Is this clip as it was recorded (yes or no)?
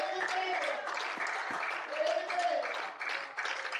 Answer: yes